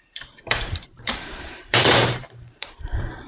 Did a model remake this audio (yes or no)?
yes